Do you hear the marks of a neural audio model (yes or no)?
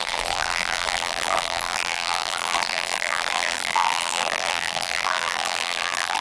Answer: yes